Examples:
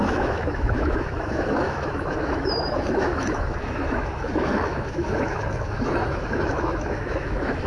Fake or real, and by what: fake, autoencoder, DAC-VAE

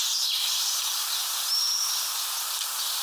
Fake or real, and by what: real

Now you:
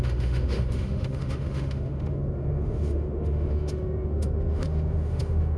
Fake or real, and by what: fake, autoencoder, DAC-VAE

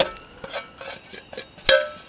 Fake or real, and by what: real